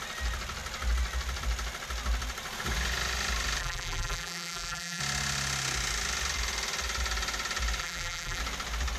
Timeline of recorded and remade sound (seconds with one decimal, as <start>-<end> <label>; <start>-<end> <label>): 0.0-3.6 recorded; 3.6-5.0 remade; 5.0-7.8 recorded; 7.8-8.4 remade; 8.4-9.0 recorded